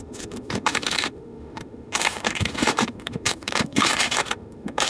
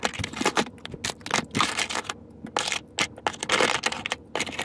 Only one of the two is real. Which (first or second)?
second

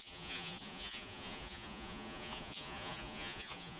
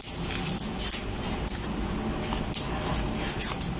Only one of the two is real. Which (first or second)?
second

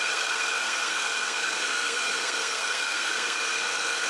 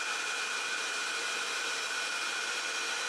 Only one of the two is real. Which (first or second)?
second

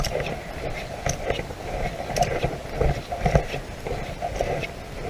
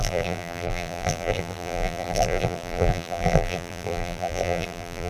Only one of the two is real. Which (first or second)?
first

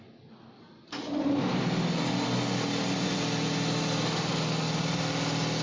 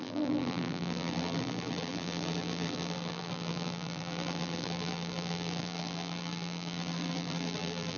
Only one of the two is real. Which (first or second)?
first